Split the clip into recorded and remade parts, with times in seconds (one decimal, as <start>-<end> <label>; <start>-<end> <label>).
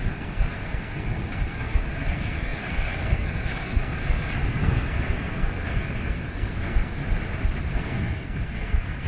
0.0-7.0 remade; 7.0-7.7 recorded; 7.7-9.1 remade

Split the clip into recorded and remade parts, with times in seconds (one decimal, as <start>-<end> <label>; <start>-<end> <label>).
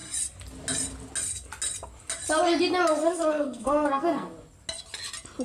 0.0-3.0 recorded; 3.0-4.3 remade; 4.3-5.4 recorded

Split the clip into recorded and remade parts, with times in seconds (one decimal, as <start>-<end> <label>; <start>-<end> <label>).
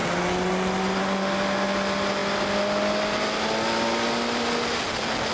0.0-5.3 recorded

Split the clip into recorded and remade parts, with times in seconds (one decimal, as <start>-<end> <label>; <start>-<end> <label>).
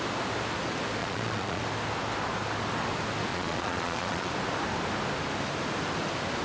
0.0-1.0 recorded; 1.0-1.6 remade; 1.6-3.3 recorded; 3.3-4.3 remade; 4.3-6.4 recorded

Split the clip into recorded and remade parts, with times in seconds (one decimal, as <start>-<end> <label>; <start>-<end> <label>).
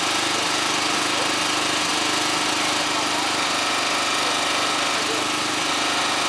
0.0-6.3 recorded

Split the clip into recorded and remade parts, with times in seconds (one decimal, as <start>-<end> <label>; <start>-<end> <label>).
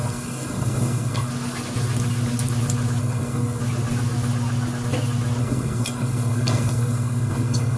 0.0-1.3 remade; 1.3-3.0 recorded; 3.0-3.6 remade; 3.6-5.4 recorded; 5.4-7.8 remade